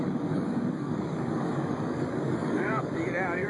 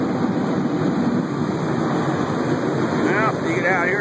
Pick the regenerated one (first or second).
first